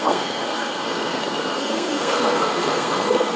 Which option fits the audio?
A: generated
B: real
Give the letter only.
A